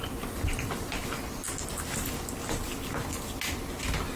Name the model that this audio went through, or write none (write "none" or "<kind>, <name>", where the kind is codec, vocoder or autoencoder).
none